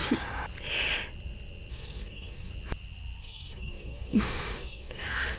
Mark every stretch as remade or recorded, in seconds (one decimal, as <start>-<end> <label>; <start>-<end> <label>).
0.0-1.7 recorded; 1.7-2.5 remade; 2.5-3.2 recorded; 3.2-5.4 remade